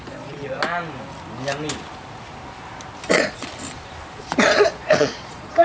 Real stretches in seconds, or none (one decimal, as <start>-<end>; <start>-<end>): 0.6-3.1; 3.5-4.2

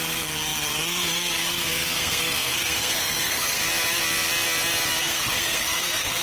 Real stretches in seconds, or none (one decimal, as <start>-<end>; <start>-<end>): 3.6-5.0